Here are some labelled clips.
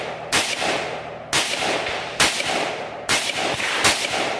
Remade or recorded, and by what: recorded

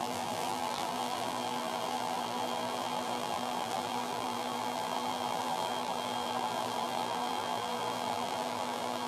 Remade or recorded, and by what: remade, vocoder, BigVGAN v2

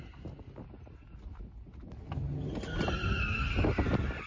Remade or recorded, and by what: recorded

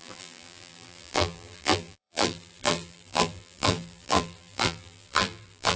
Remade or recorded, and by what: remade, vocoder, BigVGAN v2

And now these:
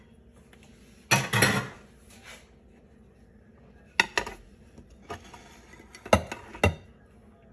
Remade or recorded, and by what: recorded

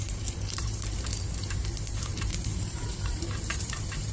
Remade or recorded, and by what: remade, vocoder, BigVGAN v2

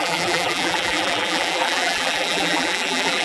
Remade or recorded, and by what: remade, vocoder, BigVGAN v2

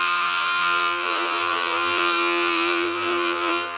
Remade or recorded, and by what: remade, vocoder, BigVGAN v2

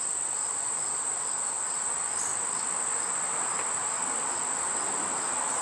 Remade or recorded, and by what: recorded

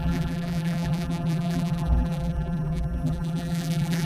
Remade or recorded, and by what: remade, vocoder, BigVGAN v2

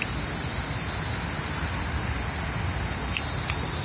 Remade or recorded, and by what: recorded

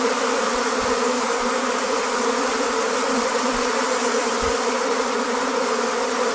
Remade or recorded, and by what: remade, vocoder, BigVGAN v2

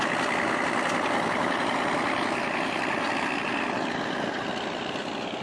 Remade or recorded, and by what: recorded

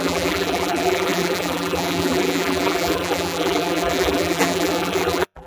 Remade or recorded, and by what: remade, vocoder, BigVGAN v2